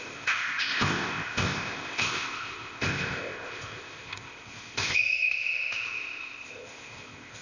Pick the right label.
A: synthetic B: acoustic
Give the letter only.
A